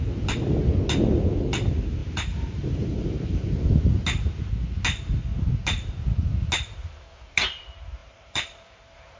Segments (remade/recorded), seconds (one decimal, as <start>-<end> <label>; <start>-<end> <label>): 0.0-2.0 recorded; 2.0-3.4 remade; 3.4-8.0 recorded; 8.0-9.2 remade